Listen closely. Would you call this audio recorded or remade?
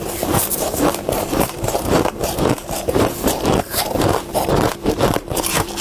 remade